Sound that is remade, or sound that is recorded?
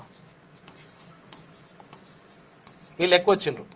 remade